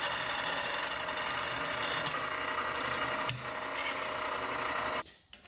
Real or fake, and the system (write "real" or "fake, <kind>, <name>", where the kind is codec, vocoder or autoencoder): real